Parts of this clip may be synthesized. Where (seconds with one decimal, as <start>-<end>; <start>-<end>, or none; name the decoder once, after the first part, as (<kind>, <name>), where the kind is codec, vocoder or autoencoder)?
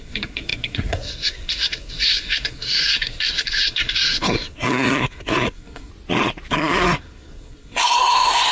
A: 0.0-5.9 (codec, SNAC); 6.5-8.5